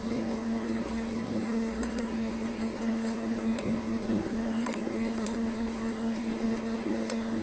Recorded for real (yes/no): no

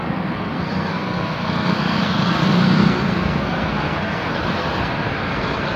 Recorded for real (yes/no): no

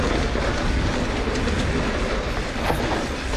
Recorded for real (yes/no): yes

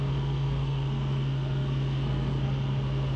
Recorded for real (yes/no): no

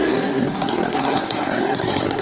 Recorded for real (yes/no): no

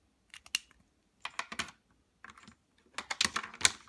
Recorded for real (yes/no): yes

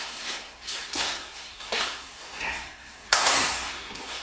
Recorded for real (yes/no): no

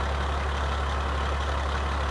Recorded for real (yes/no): yes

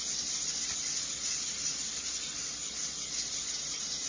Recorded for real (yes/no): yes